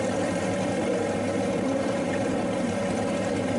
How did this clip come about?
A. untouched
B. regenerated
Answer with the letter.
B